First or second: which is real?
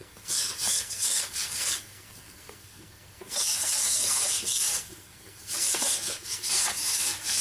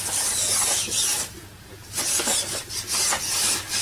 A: second